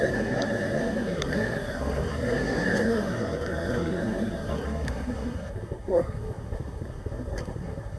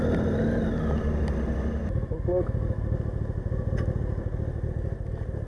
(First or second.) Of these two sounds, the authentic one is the second